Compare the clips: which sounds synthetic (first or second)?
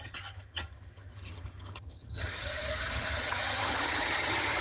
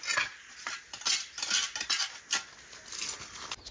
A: first